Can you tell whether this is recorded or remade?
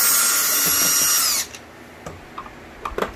recorded